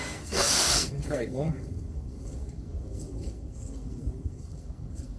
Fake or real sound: fake